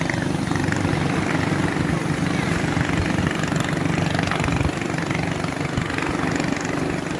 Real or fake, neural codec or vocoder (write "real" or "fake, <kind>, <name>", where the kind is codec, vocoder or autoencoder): real